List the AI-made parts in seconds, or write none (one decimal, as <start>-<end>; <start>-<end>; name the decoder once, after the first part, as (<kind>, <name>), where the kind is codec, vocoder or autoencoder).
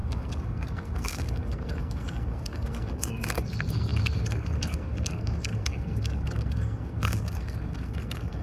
0.0-8.4 (codec, SNAC)